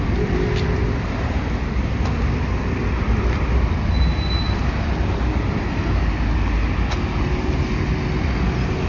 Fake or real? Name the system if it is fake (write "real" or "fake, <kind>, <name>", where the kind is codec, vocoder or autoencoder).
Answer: real